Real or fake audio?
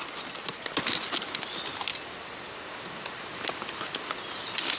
real